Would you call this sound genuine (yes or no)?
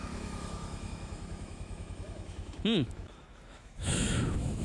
no